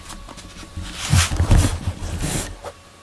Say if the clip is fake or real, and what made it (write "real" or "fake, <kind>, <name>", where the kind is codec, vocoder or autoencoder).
real